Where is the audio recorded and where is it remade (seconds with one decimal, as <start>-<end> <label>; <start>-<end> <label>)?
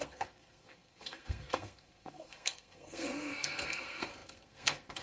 0.0-5.0 remade